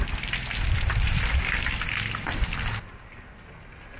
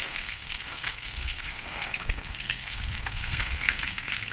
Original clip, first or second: first